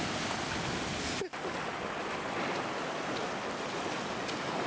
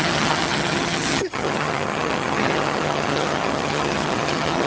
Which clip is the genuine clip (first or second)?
first